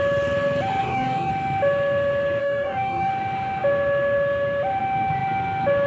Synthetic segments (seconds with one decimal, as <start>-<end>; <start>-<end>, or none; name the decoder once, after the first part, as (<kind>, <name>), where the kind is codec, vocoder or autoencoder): 0.8-1.3 (codec, DAC); 2.4-3.1